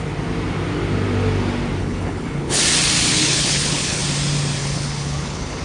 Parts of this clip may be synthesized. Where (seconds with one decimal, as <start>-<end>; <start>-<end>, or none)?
1.8-2.6; 3.1-4.0; 4.6-5.6